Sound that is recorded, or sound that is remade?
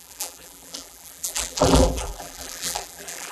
remade